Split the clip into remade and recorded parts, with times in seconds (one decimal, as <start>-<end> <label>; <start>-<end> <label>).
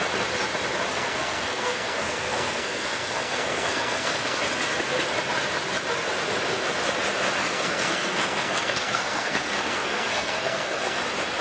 0.0-0.9 recorded; 0.9-4.4 remade; 4.4-7.4 recorded; 7.4-11.0 remade; 11.0-11.4 recorded